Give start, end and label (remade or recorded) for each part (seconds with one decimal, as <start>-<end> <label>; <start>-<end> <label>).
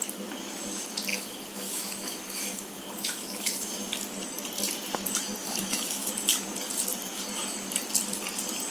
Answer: 0.0-1.1 recorded; 1.1-3.9 remade; 3.9-5.4 recorded; 5.4-6.1 remade; 6.1-8.7 recorded